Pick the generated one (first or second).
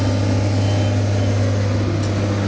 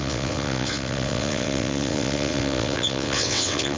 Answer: second